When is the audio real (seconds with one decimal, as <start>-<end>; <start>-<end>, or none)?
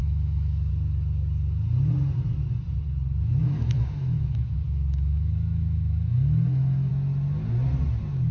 0.7-3.4; 6.9-8.3